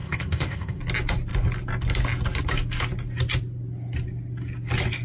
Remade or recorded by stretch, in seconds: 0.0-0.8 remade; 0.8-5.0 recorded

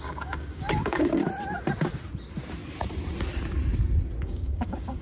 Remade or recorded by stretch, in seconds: 0.0-1.2 remade; 1.2-4.2 recorded; 4.2-5.0 remade